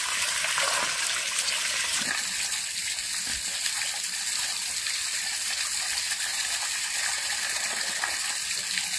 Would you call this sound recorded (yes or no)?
yes